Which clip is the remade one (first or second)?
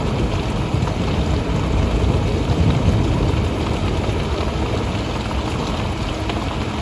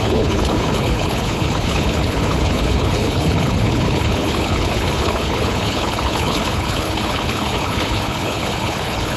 second